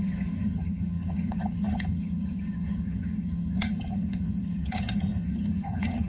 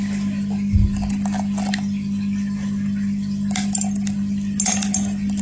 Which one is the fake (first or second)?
first